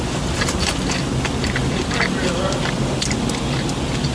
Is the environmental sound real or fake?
real